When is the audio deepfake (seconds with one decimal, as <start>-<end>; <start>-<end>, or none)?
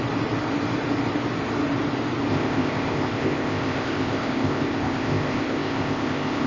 2.3-6.5